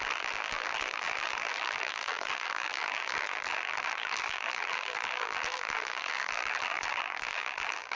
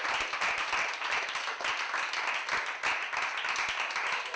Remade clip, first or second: first